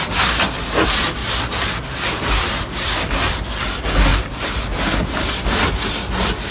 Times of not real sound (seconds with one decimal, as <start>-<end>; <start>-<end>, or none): none